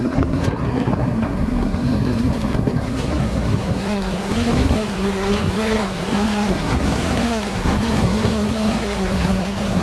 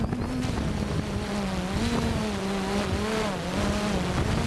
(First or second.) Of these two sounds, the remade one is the first